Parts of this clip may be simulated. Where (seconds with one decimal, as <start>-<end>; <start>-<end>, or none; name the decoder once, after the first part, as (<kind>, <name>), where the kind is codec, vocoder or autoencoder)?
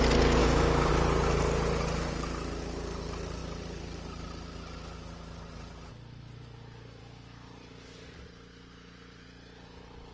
0.4-0.9 (codec, DAC)